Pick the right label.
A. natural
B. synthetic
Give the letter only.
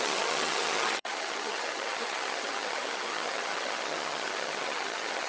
B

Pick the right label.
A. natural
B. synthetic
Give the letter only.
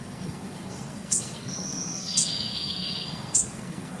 B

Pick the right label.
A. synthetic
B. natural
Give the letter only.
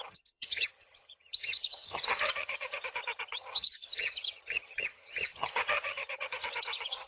A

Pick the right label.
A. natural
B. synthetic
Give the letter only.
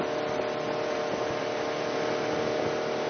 A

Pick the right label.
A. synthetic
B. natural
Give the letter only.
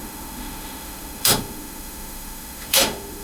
A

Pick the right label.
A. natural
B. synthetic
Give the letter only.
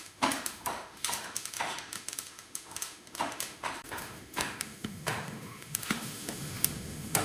B